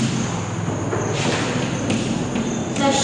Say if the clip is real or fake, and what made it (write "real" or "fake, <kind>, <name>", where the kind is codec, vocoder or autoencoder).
real